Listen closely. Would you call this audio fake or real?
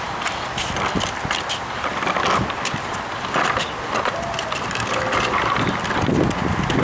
real